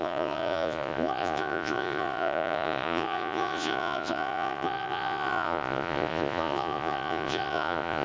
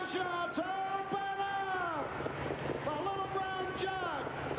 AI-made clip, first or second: first